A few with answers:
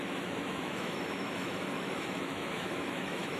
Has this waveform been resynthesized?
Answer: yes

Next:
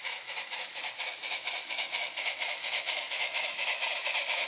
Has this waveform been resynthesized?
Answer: yes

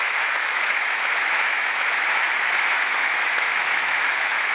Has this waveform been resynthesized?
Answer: yes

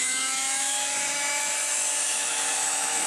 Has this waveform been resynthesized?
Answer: yes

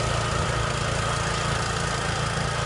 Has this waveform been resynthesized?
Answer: no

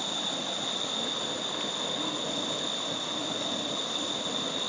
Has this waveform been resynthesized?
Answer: no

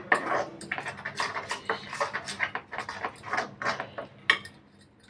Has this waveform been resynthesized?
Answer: no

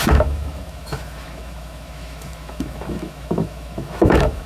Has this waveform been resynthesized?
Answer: yes